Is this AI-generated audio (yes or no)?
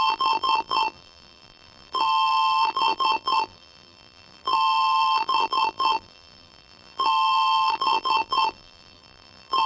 yes